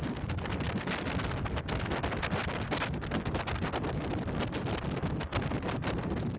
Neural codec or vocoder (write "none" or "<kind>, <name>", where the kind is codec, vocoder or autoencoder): none